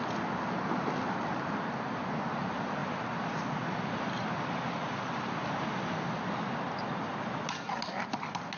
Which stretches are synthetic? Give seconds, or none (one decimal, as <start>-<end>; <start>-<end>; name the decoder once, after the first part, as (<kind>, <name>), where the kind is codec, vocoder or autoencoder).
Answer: none